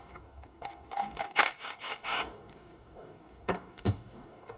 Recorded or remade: remade